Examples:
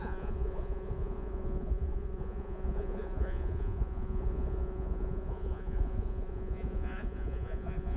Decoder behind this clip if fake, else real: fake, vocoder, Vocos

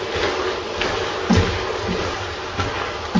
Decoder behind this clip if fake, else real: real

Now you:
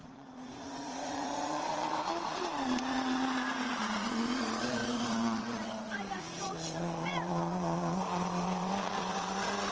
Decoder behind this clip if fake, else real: fake, vocoder, Vocos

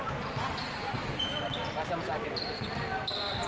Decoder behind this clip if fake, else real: real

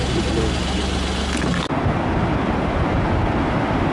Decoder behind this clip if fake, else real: real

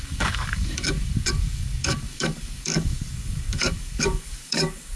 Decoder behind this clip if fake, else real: fake, codec, DAC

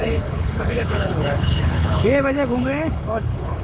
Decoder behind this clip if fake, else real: fake, codec, HILCodec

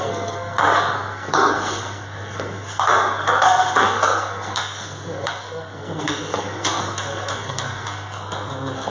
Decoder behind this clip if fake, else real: fake, codec, SNAC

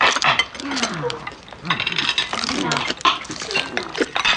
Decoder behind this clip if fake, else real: fake, vocoder, BigVGAN v2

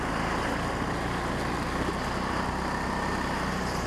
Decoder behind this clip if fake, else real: real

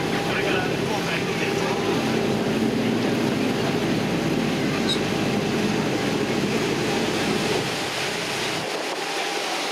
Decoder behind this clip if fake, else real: real